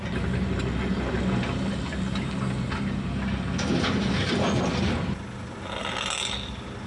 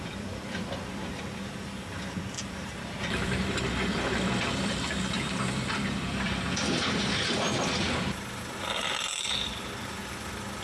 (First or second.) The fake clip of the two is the second